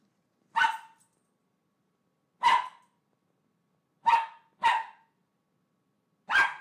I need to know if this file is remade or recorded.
recorded